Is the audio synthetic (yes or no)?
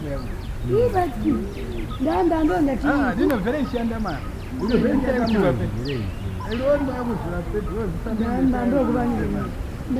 no